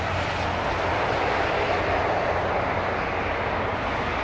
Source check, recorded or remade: recorded